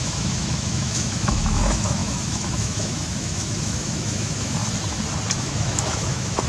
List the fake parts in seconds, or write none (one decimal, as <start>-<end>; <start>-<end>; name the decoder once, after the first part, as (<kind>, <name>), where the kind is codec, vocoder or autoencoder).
0.0-4.6 (autoencoder, DAC-VAE); 5.4-6.5